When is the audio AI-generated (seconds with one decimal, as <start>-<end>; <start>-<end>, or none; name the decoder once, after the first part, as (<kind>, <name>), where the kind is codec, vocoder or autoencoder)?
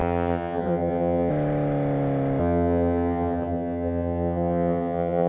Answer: 0.0-1.3 (vocoder, HiFi-GAN); 2.4-5.3